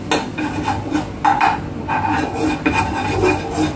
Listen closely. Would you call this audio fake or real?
real